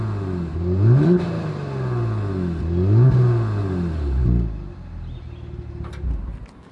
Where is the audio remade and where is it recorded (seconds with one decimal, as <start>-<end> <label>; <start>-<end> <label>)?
0.0-0.5 recorded; 0.5-1.5 remade; 1.5-3.6 recorded; 3.6-4.2 remade; 4.2-6.7 recorded